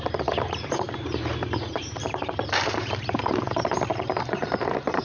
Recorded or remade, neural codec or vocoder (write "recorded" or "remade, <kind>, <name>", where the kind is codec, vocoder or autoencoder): remade, vocoder, BigVGAN v2